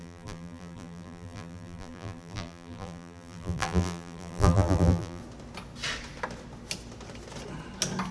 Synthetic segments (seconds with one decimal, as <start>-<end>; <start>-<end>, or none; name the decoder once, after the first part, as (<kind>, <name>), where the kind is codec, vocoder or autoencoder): 0.0-5.2 (vocoder, BigVGAN v2)